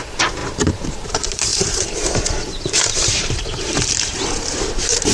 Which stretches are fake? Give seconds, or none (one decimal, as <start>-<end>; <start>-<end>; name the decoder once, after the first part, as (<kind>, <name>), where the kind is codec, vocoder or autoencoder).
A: 0.0-5.1 (vocoder, BigVGAN v2)